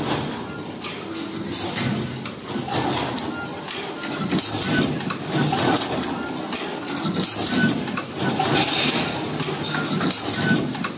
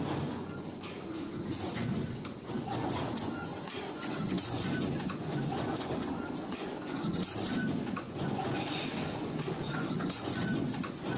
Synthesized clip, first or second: second